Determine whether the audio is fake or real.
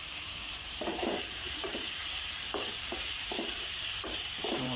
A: fake